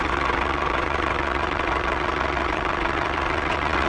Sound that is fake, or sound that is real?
fake